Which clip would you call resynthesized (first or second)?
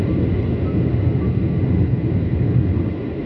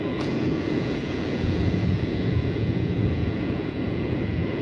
second